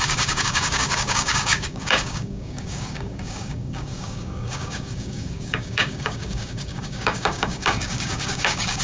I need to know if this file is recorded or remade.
remade